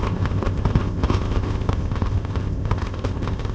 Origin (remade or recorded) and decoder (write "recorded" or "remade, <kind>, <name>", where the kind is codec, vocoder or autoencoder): remade, codec, ZipCodec